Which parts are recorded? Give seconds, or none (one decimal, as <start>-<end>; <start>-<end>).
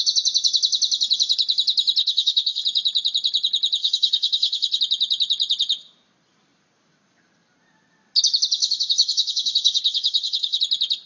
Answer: 0.0-2.0; 2.6-3.8; 4.8-8.6; 10.6-11.1